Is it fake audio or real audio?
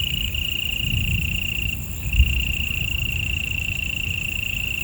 real